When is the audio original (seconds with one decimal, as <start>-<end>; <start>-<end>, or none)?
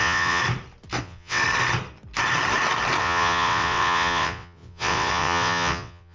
0.4-1.0; 1.4-3.0